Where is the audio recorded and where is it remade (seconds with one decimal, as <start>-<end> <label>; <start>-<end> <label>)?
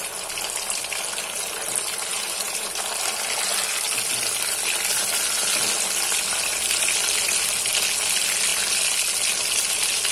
0.0-2.1 recorded; 2.1-2.7 remade; 2.7-10.1 recorded